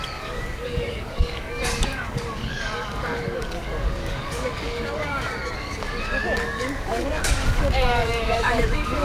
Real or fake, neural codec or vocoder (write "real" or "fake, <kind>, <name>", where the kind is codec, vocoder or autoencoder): fake, codec, DAC